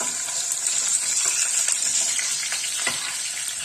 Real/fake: real